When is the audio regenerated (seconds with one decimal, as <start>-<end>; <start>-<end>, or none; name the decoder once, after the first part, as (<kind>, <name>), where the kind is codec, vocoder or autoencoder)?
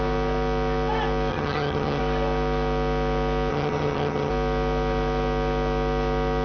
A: 1.3-2.0 (vocoder, HiFi-GAN); 3.5-4.3